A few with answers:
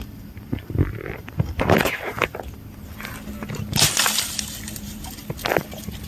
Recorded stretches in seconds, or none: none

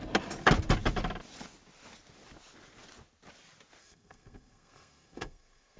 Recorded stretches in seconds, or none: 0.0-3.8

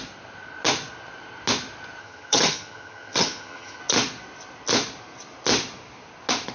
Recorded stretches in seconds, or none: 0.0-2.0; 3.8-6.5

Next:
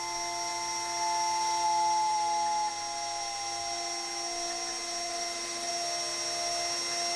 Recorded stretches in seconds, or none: 0.0-5.1; 5.7-7.2